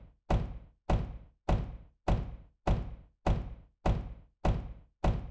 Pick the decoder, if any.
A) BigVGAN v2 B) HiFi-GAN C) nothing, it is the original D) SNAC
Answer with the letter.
C